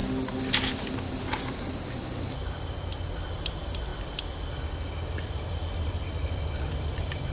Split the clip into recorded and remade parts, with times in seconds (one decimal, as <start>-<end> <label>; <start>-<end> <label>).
0.0-7.3 recorded

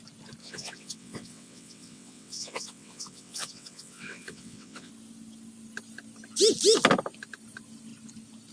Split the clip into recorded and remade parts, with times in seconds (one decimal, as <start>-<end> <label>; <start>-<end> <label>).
0.0-0.4 recorded; 0.4-4.9 remade; 4.9-8.5 recorded

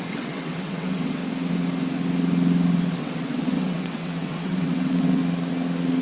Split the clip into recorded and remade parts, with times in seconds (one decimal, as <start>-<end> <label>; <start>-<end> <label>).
0.0-1.2 remade; 1.2-2.9 recorded; 2.9-5.2 remade; 5.2-6.0 recorded